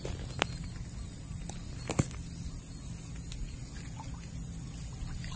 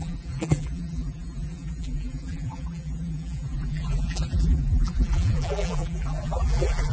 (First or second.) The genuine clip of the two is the first